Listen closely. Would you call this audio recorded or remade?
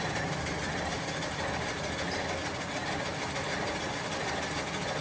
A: recorded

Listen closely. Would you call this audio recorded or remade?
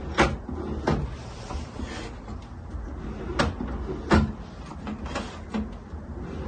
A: recorded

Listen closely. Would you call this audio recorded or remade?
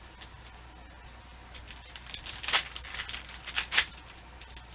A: recorded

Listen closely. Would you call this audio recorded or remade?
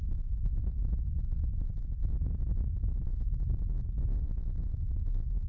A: recorded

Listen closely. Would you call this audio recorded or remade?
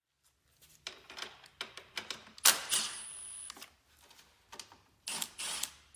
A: recorded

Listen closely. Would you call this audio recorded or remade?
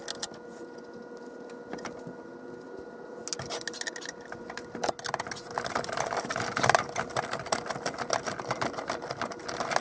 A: recorded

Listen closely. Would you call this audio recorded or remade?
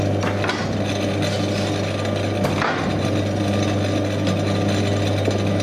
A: recorded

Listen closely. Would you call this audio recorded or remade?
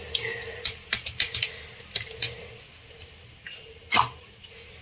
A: recorded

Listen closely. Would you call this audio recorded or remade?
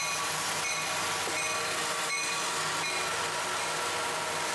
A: recorded